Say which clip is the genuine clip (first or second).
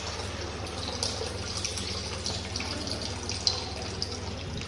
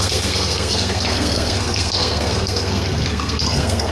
first